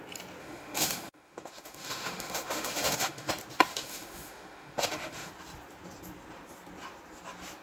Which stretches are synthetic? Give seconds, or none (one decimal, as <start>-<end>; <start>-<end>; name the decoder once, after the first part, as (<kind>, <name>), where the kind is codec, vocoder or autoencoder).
0.4-3.3 (autoencoder, DAC-VAE); 3.7-5.3